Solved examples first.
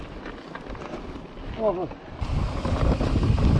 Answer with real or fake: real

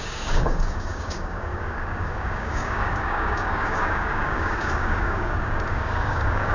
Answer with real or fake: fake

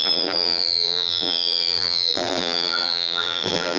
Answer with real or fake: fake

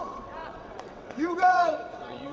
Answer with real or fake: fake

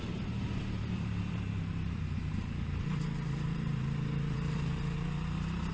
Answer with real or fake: fake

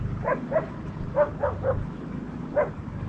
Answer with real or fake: real